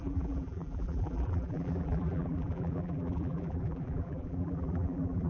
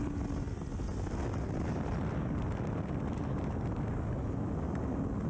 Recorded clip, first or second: second